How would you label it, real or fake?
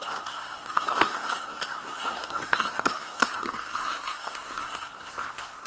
fake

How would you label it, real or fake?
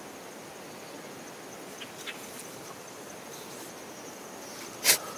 real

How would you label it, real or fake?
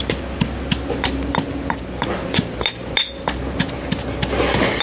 real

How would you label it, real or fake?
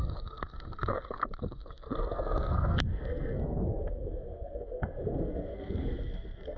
fake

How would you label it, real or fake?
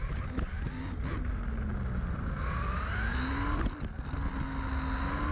real